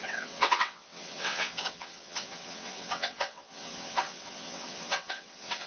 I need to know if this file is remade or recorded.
remade